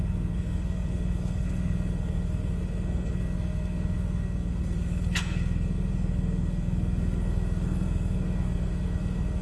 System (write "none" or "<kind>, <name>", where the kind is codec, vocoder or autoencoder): codec, SNAC